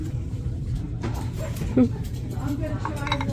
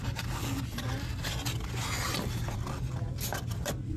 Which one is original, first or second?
second